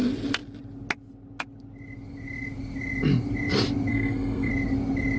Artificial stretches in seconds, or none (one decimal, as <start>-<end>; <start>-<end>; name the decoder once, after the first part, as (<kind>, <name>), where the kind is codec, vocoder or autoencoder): 3.9-4.5 (codec, SNAC)